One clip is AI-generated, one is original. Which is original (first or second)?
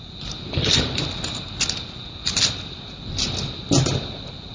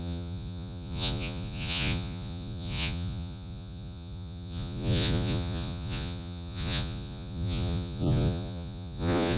first